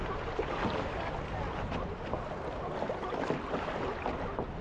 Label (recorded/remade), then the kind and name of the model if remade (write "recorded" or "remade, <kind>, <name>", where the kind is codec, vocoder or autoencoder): recorded